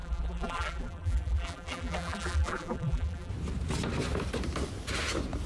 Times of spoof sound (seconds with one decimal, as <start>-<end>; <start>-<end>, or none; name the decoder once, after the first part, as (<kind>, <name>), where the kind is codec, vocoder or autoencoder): 0.0-3.3 (vocoder, BigVGAN v2)